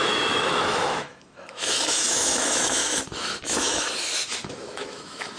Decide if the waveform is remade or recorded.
remade